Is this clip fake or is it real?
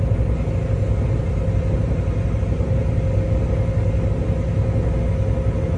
real